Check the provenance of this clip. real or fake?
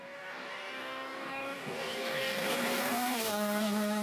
fake